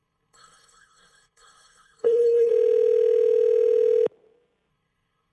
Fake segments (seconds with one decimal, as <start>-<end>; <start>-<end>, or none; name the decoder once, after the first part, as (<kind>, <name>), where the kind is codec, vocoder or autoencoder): 0.0-2.5 (codec, SNAC); 4.7-5.3